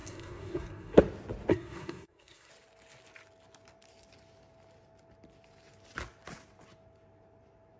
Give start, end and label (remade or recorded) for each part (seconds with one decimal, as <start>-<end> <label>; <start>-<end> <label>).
0.0-1.0 remade; 1.0-1.5 recorded; 1.5-2.5 remade; 2.5-7.8 recorded